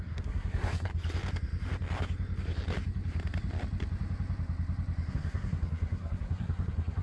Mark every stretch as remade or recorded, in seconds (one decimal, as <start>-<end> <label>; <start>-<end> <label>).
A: 0.0-0.9 remade; 0.9-5.1 recorded; 5.1-7.0 remade